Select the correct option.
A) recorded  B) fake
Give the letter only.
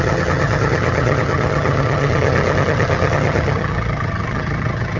B